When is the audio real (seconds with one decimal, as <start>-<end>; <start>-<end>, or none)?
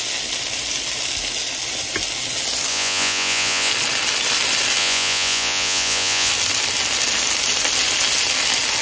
0.0-2.7; 3.7-4.8; 6.3-8.8